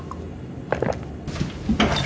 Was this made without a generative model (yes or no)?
yes